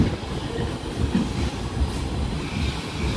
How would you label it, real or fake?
real